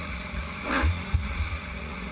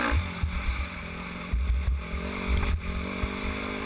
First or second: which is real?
second